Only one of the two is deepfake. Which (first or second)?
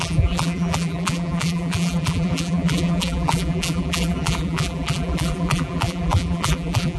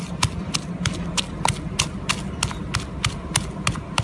first